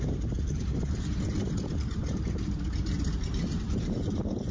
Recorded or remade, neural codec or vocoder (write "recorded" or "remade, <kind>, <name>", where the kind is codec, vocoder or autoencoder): remade, vocoder, BigVGAN v2